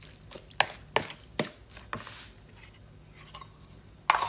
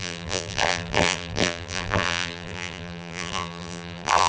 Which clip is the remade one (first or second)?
second